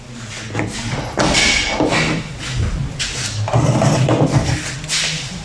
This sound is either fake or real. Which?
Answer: real